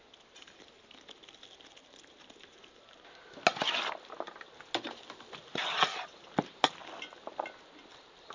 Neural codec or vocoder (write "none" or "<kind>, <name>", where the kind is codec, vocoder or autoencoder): none